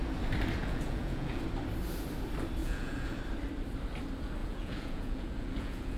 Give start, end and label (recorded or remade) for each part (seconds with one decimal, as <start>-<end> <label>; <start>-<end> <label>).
0.0-0.6 recorded; 0.6-1.4 remade; 1.4-2.6 recorded; 2.6-3.2 remade; 3.2-4.4 recorded; 4.4-6.0 remade